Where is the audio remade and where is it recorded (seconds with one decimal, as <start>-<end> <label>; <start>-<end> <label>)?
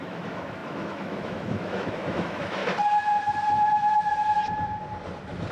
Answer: 0.0-2.6 remade; 2.6-5.5 recorded